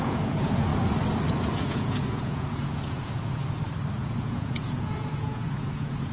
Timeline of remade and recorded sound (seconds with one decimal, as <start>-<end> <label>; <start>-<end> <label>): 0.0-0.7 remade; 0.7-1.3 recorded; 1.3-3.4 remade; 3.4-4.0 recorded; 4.0-6.1 remade